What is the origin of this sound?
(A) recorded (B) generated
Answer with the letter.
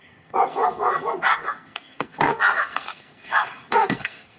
B